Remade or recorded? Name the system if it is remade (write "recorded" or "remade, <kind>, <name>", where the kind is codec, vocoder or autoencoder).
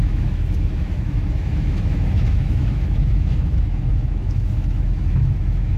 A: remade, autoencoder, DAC-VAE